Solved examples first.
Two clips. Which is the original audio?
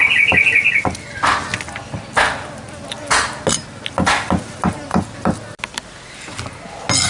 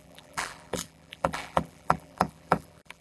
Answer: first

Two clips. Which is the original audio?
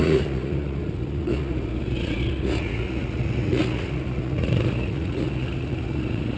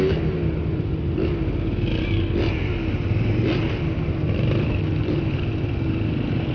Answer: second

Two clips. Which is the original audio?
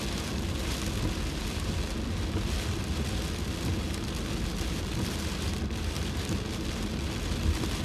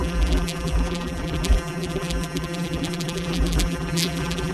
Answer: first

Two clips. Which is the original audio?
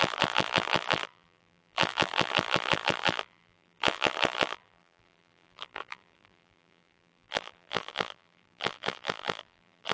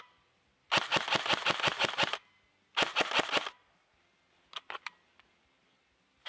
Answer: second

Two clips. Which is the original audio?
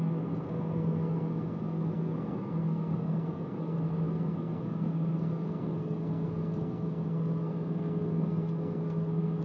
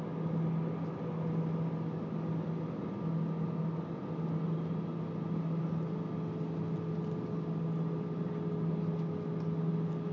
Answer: second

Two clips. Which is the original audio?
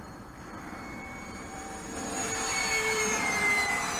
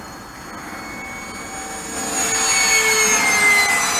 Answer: second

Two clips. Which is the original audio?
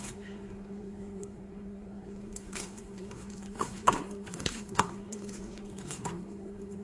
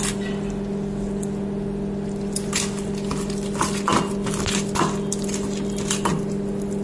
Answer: second